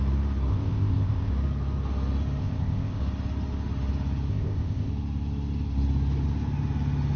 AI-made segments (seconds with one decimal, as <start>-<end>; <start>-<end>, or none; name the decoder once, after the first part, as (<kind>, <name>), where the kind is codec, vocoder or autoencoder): 0.5-1.3 (codec, ZipCodec); 2.4-3.0; 4.3-4.9